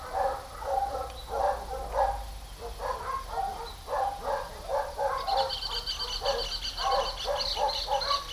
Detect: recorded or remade recorded